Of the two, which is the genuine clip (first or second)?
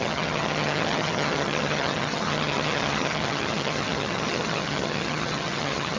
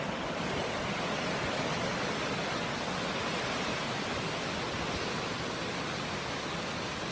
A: second